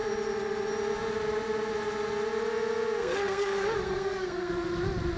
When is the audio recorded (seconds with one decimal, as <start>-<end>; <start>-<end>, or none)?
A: 0.0-3.0; 4.5-5.2